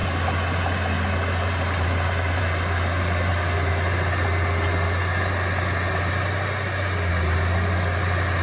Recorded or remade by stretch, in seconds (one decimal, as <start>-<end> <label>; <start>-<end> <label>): 0.0-8.4 recorded